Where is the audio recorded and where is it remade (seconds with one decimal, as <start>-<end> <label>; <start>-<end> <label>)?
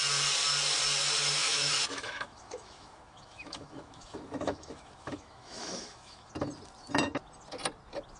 0.0-1.4 recorded; 1.4-6.3 remade; 6.3-8.2 recorded